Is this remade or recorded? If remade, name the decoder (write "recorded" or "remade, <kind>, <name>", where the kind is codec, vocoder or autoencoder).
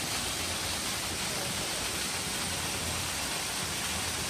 recorded